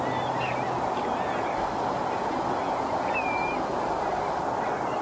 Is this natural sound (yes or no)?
yes